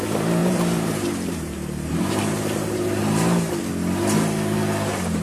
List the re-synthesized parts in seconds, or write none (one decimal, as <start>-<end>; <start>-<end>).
0.4-3.5